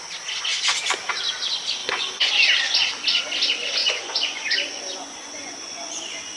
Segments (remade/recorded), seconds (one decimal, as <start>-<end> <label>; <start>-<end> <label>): 0.0-1.8 recorded; 1.8-2.3 remade; 2.3-3.8 recorded; 3.8-6.4 remade